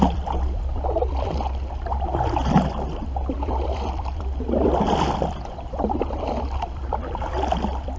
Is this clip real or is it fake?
fake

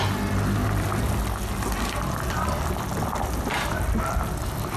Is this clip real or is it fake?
real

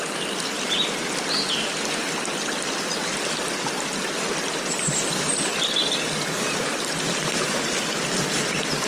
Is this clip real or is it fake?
real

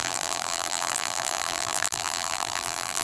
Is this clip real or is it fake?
fake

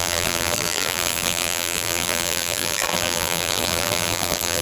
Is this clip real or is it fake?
fake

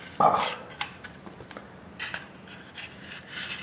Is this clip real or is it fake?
real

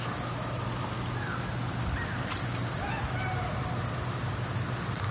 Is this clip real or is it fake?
fake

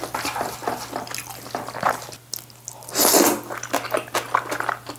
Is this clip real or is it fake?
real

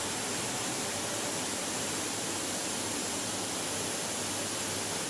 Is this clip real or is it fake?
real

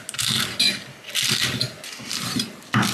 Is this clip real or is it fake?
real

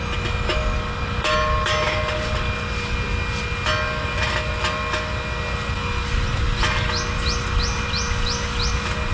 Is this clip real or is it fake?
real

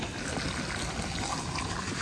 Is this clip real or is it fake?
real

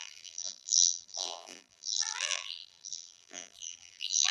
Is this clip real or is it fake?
fake